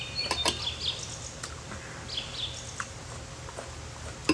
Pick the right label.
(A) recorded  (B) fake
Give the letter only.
A